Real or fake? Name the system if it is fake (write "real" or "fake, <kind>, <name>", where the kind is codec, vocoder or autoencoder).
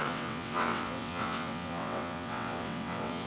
fake, vocoder, WaveNeXt